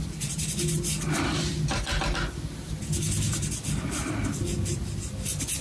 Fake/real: real